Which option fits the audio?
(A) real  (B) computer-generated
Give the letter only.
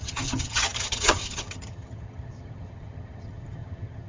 B